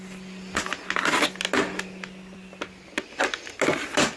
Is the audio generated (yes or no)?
no